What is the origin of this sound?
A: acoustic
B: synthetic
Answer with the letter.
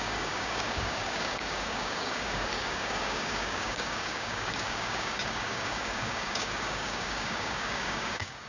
B